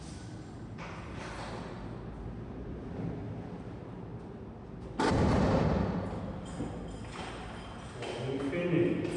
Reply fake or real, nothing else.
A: real